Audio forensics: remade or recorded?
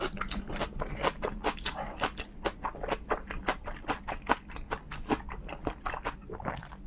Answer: recorded